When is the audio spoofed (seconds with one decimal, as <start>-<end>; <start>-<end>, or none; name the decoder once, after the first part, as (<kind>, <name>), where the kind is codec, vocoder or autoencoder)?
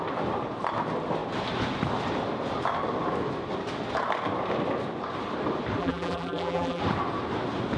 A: 5.8-6.8 (vocoder, BigVGAN v2)